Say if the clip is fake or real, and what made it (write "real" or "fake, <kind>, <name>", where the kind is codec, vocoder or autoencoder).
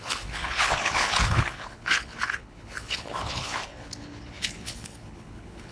fake, codec, HILCodec